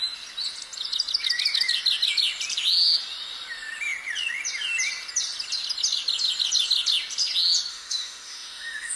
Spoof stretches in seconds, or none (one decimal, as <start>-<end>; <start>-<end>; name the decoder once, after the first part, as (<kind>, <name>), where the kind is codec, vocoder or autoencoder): 7.7-9.0 (autoencoder, DAC-VAE)